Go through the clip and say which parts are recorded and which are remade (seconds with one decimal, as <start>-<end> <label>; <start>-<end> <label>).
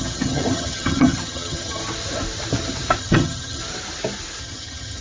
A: 0.0-1.8 remade; 1.8-3.0 recorded; 3.0-3.6 remade; 3.6-4.4 recorded; 4.4-5.0 remade